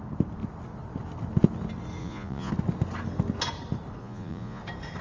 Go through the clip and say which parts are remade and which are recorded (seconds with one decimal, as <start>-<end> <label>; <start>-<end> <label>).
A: 0.0-2.0 recorded; 2.0-2.5 remade; 2.5-4.0 recorded; 4.0-4.6 remade; 4.6-5.0 recorded